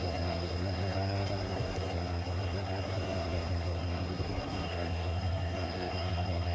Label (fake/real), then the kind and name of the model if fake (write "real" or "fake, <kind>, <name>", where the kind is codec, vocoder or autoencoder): fake, codec, SNAC